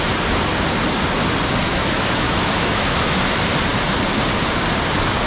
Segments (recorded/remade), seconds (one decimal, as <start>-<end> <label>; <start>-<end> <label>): 0.0-1.7 recorded; 1.7-3.2 remade; 3.2-5.3 recorded